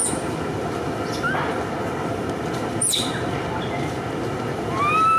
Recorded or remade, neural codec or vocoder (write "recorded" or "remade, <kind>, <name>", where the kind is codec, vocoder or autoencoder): recorded